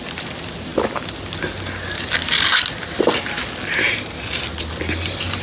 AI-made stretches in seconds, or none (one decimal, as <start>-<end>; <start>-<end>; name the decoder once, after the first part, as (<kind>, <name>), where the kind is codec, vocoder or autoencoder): none